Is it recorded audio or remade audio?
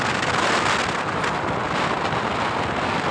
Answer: recorded